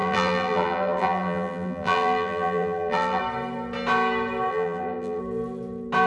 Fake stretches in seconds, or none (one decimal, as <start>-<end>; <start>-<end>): 0.0-3.2; 4.5-5.2

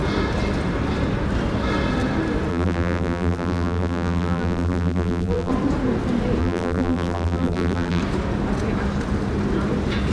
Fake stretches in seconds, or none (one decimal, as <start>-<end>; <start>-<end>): 2.5-5.5; 6.4-8.0

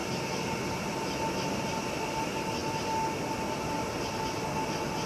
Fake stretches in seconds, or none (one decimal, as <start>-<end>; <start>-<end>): none